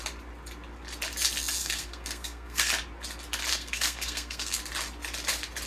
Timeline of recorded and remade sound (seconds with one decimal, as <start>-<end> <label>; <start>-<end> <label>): 0.0-1.6 recorded; 1.6-2.7 remade; 2.7-3.5 recorded; 3.5-4.6 remade; 4.6-5.7 recorded

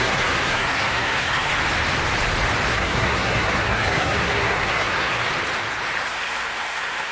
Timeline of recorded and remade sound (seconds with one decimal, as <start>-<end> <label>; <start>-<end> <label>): 0.0-1.5 remade; 1.5-2.7 recorded; 2.7-5.2 remade; 5.2-6.1 recorded; 6.1-7.1 remade